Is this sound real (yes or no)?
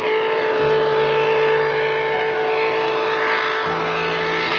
yes